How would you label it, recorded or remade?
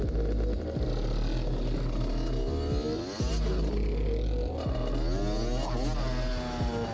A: recorded